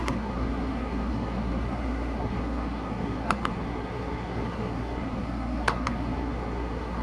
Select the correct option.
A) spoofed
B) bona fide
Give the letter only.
A